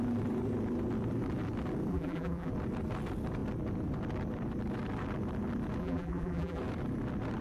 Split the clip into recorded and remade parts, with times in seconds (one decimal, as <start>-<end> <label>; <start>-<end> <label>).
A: 0.0-1.9 recorded; 1.9-2.5 remade; 2.5-5.8 recorded; 5.8-6.6 remade; 6.6-7.4 recorded